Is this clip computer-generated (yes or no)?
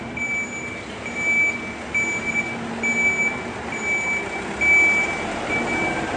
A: no